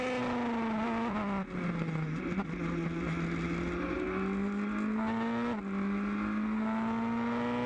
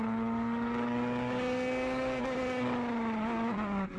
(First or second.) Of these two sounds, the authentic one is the first